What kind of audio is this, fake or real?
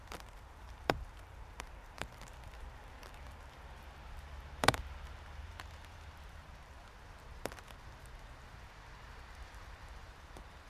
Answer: fake